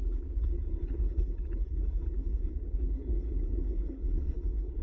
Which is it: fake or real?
fake